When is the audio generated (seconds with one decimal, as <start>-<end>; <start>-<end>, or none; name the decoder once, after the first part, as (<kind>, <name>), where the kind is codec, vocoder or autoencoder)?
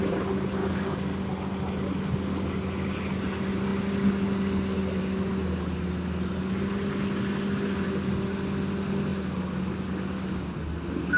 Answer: 0.6-1.2 (codec, DAC)